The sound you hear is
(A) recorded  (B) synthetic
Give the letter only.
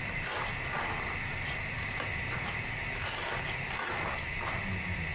A